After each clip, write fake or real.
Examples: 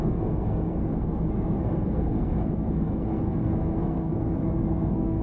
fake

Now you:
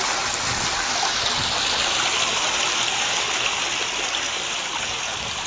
real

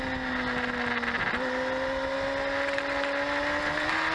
real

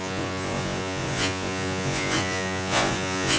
fake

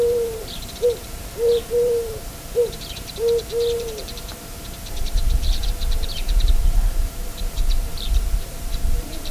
fake